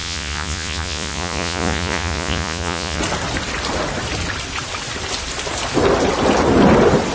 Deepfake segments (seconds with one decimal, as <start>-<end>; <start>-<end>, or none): 0.0-3.0